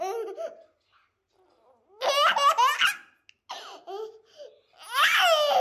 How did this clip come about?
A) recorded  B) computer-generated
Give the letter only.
A